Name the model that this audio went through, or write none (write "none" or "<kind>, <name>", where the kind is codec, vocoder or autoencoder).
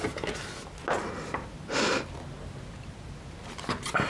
none